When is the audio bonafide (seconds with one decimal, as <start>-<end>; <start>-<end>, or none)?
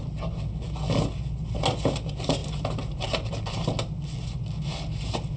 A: 0.0-5.4